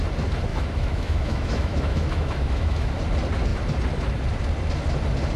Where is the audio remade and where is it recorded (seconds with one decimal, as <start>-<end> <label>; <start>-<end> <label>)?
0.0-0.5 recorded; 0.5-3.0 remade; 3.0-5.4 recorded